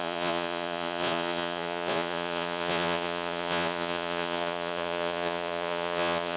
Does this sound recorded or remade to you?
remade